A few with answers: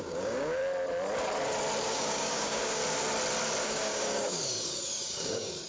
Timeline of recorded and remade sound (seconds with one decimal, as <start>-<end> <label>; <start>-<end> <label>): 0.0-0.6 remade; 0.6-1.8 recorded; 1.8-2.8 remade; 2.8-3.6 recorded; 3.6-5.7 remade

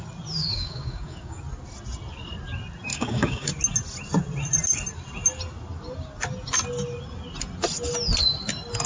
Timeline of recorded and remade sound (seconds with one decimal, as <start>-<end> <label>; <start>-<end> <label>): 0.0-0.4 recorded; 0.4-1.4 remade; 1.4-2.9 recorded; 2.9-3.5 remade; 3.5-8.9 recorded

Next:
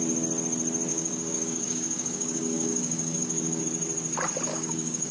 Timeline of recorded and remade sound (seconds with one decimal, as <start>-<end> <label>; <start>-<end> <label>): 0.0-0.9 recorded; 0.9-3.6 remade; 3.6-4.5 recorded; 4.5-5.1 remade

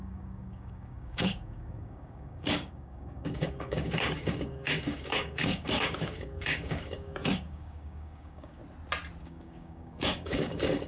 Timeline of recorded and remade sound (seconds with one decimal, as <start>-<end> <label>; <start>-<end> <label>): 0.0-8.6 remade; 8.6-9.2 recorded; 9.2-10.9 remade

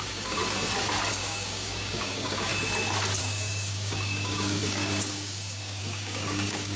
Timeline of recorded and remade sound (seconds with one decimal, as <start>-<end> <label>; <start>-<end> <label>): 0.0-0.4 remade; 0.4-1.1 recorded; 1.1-2.5 remade; 2.5-3.2 recorded; 3.2-6.8 remade